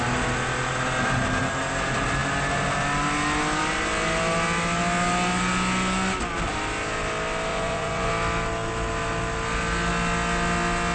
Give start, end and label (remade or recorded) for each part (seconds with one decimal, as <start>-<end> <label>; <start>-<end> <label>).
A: 0.0-7.5 recorded; 7.5-8.1 remade; 8.1-10.9 recorded